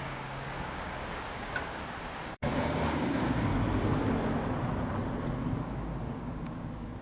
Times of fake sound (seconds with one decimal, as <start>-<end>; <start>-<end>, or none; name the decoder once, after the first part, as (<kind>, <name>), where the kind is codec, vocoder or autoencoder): 0.0-3.5 (codec, DAC); 6.0-7.0